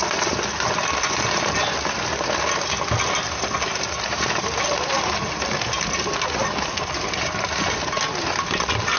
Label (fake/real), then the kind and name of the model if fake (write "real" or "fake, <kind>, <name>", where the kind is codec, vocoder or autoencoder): real